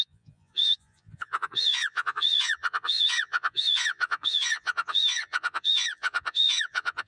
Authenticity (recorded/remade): remade